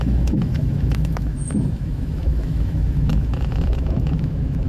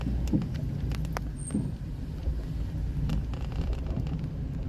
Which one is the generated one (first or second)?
first